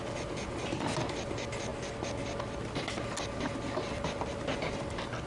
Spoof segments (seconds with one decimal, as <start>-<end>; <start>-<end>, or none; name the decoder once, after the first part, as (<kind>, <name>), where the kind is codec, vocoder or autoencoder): none

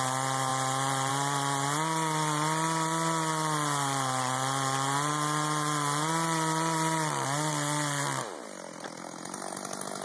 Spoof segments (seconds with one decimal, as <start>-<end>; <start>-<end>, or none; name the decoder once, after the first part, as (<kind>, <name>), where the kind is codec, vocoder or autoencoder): none

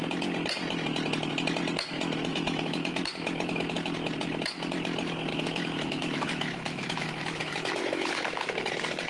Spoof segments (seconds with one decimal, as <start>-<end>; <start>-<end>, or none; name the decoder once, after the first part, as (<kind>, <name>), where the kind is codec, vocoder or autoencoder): 2.3-3.0 (autoencoder, DAC-VAE); 5.3-8.7

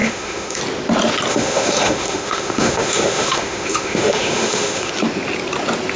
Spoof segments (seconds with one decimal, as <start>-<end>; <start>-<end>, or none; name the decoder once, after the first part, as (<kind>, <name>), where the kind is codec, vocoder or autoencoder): 0.0-0.6 (autoencoder, DAC-VAE); 1.3-4.9

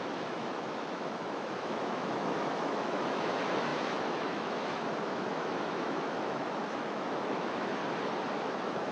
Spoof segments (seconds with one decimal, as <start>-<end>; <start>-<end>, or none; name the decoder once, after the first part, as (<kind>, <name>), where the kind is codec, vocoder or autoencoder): 0.0-7.8 (autoencoder, DAC-VAE); 8.4-8.9

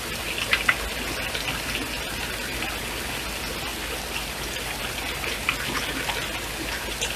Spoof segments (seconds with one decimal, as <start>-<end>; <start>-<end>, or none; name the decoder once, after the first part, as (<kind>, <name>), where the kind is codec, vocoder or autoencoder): none

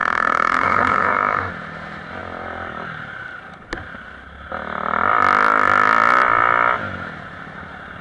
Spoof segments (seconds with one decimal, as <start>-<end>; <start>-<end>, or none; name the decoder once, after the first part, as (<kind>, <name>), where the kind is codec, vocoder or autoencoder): 0.0-1.5 (autoencoder, DAC-VAE)

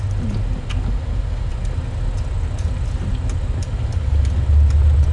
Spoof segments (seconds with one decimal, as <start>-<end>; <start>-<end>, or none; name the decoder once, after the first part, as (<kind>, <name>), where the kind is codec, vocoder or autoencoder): none